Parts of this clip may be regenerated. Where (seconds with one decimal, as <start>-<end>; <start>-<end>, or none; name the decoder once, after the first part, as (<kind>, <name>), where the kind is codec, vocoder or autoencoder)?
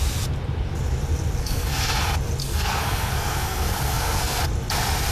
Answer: 1.4-1.9 (codec, SNAC); 2.4-4.4